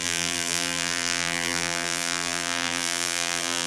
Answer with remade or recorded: remade